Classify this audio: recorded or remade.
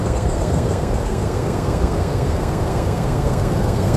remade